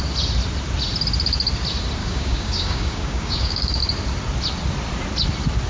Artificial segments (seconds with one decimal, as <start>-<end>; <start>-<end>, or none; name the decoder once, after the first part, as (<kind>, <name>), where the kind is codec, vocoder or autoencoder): 2.0-3.8 (codec, DAC)